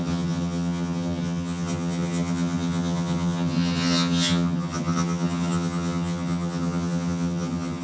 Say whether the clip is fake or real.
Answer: fake